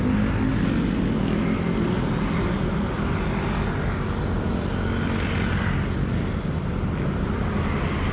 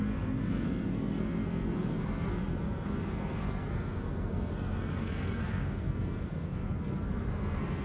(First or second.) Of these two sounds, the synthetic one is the second